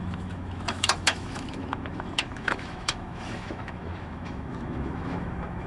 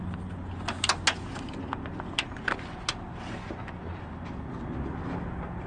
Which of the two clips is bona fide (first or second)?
second